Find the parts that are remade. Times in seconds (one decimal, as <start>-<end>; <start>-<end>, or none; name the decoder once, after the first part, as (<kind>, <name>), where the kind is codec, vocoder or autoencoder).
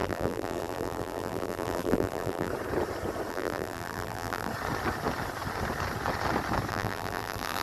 0.0-2.5 (vocoder, BigVGAN v2); 3.3-4.5; 6.7-7.6